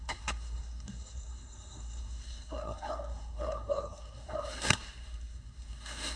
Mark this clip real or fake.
fake